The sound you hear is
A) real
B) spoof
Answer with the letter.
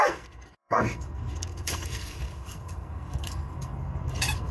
B